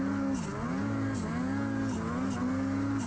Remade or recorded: recorded